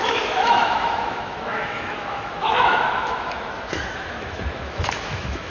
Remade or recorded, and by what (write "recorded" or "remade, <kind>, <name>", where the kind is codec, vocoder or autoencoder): remade, autoencoder, DAC-VAE